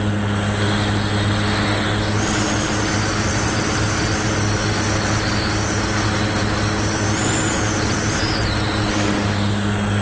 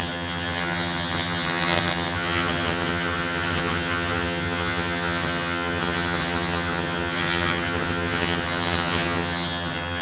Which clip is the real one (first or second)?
first